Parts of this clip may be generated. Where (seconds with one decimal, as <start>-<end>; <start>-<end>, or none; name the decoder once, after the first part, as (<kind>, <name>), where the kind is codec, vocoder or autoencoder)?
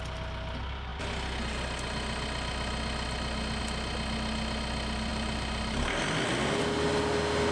5.1-6.1 (vocoder, BigVGAN v2)